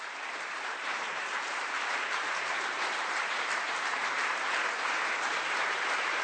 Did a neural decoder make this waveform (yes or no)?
yes